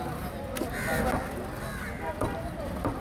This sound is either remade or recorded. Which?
recorded